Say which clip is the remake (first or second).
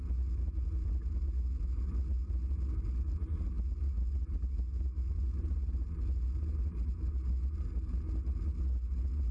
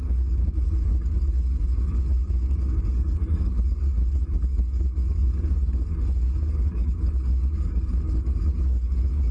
second